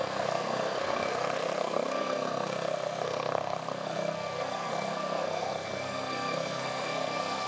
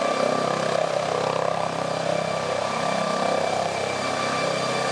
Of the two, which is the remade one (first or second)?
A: first